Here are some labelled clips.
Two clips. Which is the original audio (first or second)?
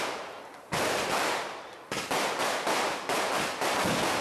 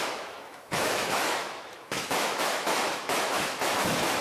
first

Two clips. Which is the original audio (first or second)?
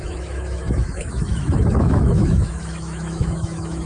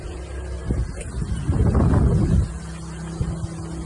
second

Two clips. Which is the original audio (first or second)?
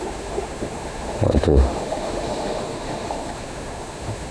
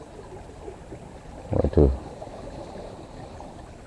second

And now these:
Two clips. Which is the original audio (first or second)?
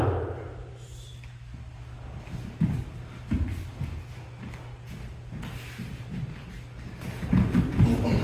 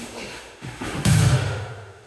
first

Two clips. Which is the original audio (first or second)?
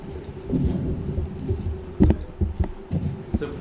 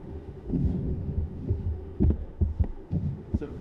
first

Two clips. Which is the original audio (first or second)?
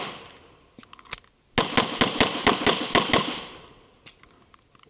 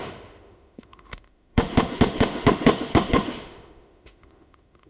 first